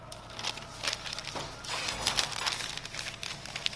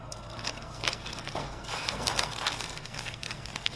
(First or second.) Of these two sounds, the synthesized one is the second